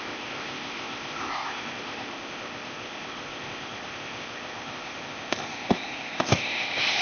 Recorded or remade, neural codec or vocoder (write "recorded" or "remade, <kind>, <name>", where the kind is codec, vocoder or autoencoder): remade, codec, ZipCodec